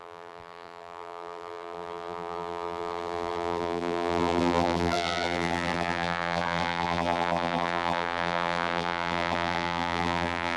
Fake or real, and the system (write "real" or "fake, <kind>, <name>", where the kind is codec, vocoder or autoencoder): fake, vocoder, BigVGAN v2